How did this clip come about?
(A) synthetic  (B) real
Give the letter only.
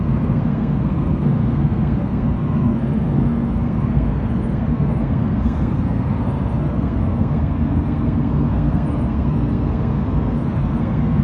A